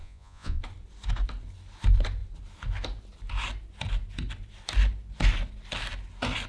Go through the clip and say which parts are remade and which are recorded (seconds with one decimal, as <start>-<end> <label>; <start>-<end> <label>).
0.0-0.6 remade; 0.6-6.5 recorded